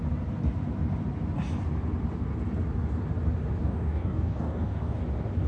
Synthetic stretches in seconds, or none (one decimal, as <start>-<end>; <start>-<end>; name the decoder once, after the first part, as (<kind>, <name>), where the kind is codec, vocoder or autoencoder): 3.6-5.0 (codec, DAC)